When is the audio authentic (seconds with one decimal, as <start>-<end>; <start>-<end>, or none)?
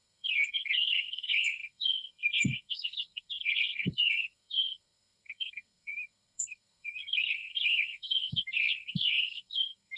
none